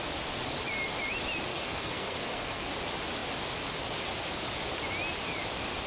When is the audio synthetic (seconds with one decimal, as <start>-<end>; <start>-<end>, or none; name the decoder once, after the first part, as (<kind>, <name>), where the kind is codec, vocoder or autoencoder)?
1.5-2.7 (codec, SNAC)